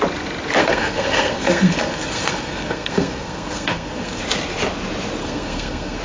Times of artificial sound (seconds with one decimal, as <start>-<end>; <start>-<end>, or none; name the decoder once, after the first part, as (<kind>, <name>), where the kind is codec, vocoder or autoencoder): 0.6-4.2 (codec, SNAC); 5.2-6.0